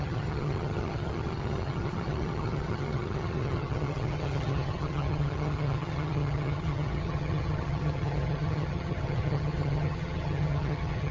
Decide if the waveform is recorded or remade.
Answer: remade